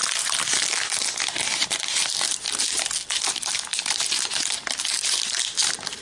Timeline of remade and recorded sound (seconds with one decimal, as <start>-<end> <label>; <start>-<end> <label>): 0.0-6.0 recorded